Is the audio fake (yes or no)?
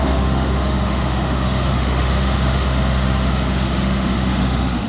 yes